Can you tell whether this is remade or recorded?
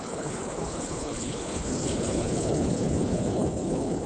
remade